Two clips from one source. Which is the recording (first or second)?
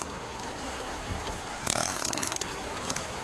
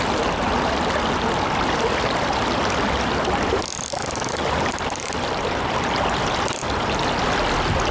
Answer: second